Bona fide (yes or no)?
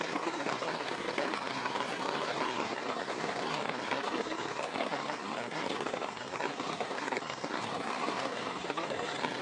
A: no